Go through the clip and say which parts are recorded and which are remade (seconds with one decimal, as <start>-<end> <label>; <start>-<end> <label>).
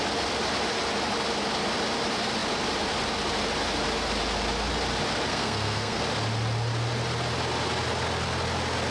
0.0-5.3 recorded; 5.3-6.0 remade; 6.0-8.9 recorded